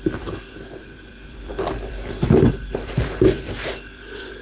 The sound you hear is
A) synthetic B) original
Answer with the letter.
A